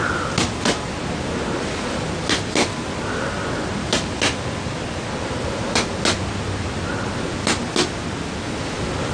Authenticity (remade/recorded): recorded